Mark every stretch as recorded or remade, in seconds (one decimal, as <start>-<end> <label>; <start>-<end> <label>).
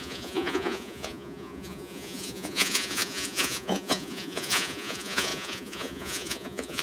0.0-6.8 remade